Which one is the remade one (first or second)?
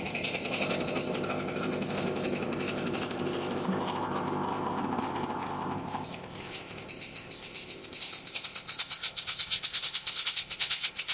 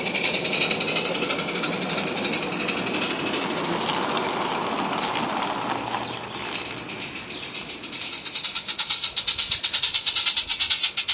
first